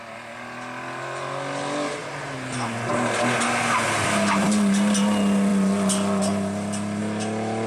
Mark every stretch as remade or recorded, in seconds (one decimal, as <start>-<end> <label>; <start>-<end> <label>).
0.0-7.7 recorded